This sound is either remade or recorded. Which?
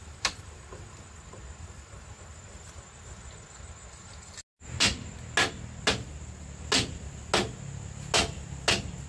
recorded